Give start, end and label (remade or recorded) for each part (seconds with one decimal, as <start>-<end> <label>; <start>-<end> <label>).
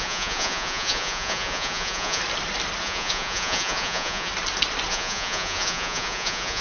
0.0-2.2 remade; 2.2-2.8 recorded; 2.8-4.3 remade; 4.3-4.9 recorded; 4.9-6.6 remade